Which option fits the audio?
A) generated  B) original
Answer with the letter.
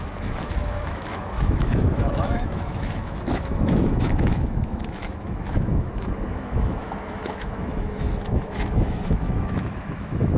A